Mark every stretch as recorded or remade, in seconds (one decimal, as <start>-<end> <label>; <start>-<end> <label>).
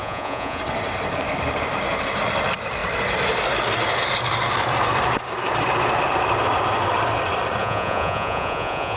0.0-0.6 remade; 0.6-7.6 recorded; 7.6-9.0 remade